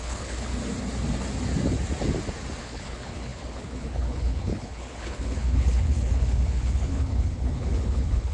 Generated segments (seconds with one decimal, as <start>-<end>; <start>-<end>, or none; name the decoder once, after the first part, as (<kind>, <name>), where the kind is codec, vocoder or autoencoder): 0.0-0.5 (codec, HILCodec); 2.6-8.3